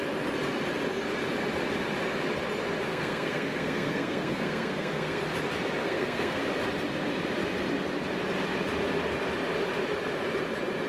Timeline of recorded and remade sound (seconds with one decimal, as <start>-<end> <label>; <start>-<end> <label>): 0.0-2.9 recorded; 2.9-5.2 remade; 5.2-5.8 recorded; 5.8-6.4 remade; 6.4-10.9 recorded